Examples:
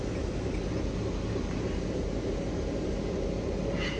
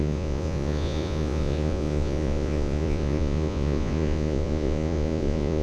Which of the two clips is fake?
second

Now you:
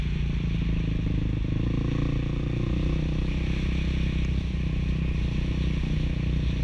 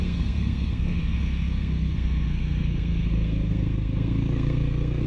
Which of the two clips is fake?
second